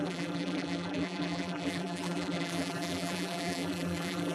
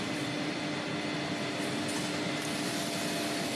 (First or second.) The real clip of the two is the second